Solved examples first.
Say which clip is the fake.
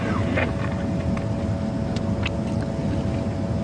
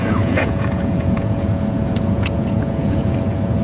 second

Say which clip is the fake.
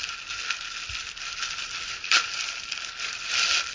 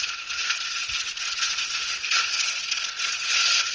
second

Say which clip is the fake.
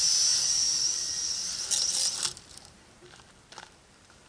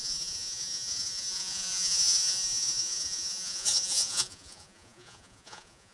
second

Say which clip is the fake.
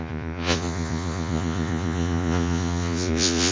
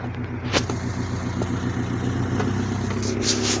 first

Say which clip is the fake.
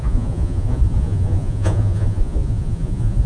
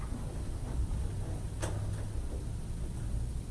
first